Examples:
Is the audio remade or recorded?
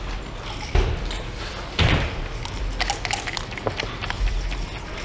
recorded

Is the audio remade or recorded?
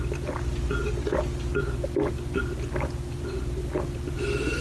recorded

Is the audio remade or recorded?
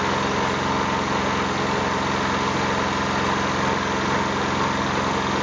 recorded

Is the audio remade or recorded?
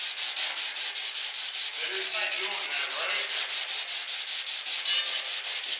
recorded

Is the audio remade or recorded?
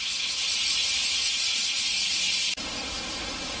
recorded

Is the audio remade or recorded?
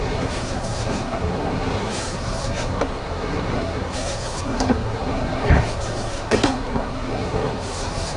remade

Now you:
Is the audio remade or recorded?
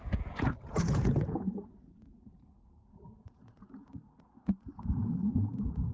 remade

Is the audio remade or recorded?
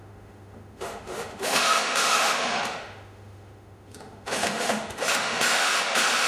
remade